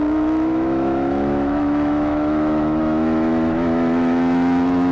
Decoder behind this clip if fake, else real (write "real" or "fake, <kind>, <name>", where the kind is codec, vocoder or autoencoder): fake, autoencoder, DAC-VAE